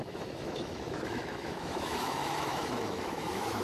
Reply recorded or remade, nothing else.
remade